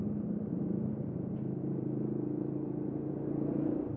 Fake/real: real